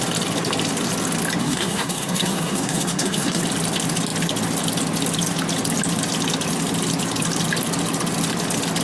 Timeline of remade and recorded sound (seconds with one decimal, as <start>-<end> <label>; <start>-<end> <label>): 0.0-1.4 recorded; 1.4-3.4 remade; 3.4-8.8 recorded